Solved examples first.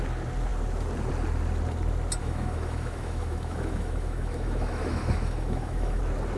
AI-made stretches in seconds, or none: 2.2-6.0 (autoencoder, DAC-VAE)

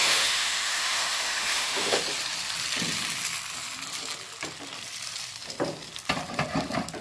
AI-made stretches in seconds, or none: 0.0-2.0 (autoencoder, DAC-VAE)